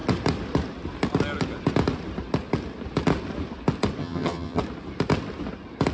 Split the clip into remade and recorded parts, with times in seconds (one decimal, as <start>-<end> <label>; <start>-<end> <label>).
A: 0.0-4.0 recorded; 4.0-4.6 remade; 4.6-5.9 recorded